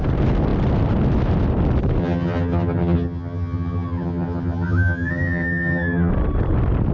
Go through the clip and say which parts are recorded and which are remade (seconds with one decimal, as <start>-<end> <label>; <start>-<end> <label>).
0.0-2.0 recorded; 2.0-6.1 remade; 6.1-6.9 recorded